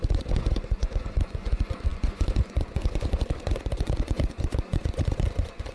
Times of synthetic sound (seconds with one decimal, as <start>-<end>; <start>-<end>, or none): 0.0-5.7